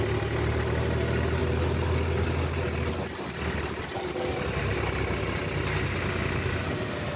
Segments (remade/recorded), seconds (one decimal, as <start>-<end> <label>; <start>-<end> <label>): 0.0-7.2 recorded